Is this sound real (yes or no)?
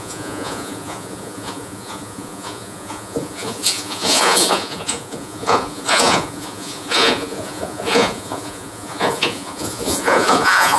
no